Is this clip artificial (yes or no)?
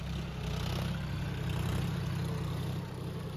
no